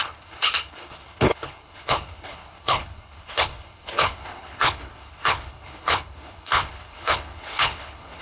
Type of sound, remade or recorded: remade